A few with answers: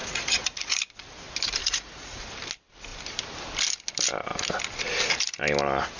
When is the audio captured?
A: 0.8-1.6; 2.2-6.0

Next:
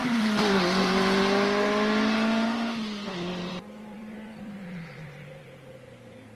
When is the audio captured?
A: 1.2-3.5; 5.5-6.4